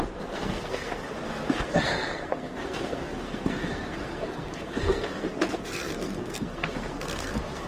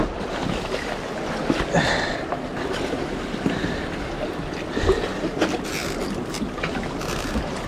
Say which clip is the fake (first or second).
first